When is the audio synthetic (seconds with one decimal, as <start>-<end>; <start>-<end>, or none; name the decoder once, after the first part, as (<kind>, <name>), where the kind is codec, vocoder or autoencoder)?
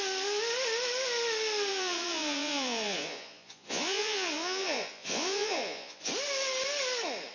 1.7-6.1 (vocoder, Vocos)